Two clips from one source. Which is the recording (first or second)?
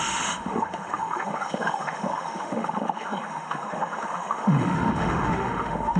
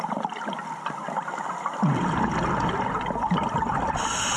second